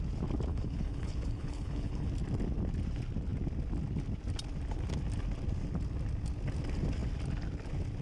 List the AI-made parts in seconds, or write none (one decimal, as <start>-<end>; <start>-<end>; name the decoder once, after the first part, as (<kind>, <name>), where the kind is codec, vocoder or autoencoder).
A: 0.5-2.1 (codec, HILCodec)